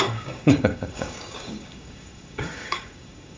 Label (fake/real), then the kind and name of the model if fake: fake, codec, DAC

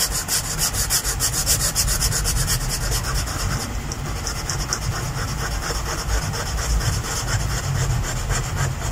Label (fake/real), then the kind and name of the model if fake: real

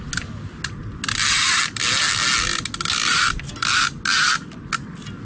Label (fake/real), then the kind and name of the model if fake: real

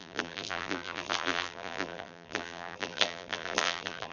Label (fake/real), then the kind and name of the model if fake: fake, vocoder, BigVGAN v2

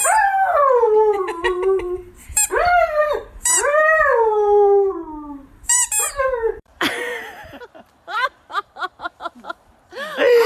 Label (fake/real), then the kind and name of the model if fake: fake, vocoder, BigVGAN v2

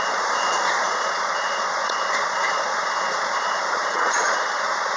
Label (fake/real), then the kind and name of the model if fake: fake, vocoder, Vocos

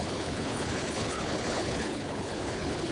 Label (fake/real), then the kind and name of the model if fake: fake, codec, HILCodec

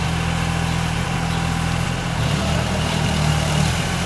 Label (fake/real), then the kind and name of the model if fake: real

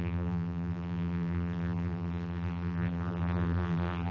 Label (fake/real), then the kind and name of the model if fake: fake, vocoder, BigVGAN v2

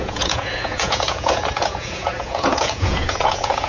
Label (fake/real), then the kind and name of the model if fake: fake, vocoder, Vocos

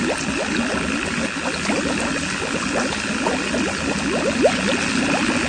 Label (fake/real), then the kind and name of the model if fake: real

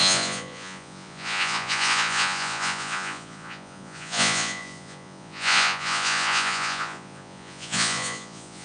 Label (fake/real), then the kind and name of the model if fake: fake, vocoder, Vocos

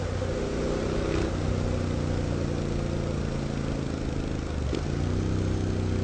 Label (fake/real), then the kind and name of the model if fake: real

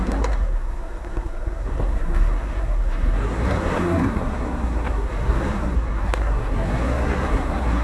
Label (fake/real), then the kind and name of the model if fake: fake, codec, SNAC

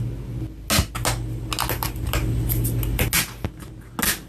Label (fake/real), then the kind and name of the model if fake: real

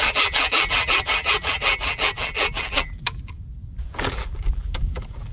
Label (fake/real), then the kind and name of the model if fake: fake, vocoder, BigVGAN v2